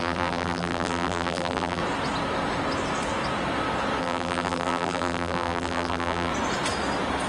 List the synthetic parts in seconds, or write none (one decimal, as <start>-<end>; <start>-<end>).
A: 0.0-1.8; 4.0-6.3